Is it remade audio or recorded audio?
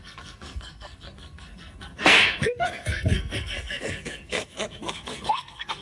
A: remade